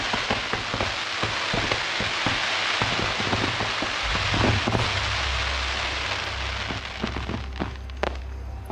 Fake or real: real